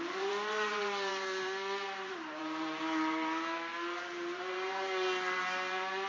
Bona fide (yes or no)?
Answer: no